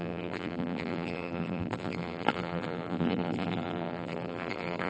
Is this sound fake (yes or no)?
yes